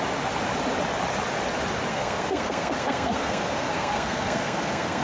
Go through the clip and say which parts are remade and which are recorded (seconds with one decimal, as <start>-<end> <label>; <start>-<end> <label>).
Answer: 0.0-1.9 recorded; 1.9-5.0 remade